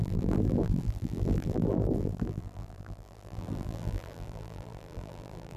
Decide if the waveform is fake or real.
fake